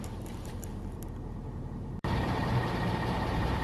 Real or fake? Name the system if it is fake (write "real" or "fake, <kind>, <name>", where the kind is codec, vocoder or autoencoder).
fake, vocoder, BigVGAN v2